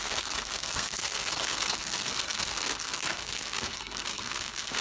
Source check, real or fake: fake